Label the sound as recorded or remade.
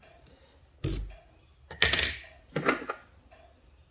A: recorded